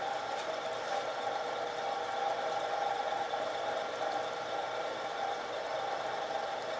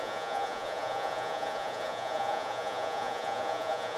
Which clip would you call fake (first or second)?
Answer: second